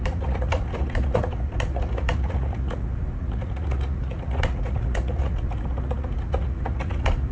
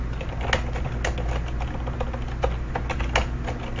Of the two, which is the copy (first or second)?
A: first